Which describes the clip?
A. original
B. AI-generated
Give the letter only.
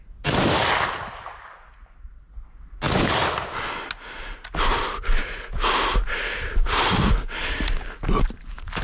A